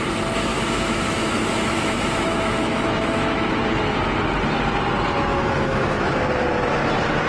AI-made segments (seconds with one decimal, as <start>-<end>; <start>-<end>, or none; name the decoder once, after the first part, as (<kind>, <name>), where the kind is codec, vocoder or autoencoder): 0.5-3.5 (autoencoder, DAC-VAE); 5.3-6.2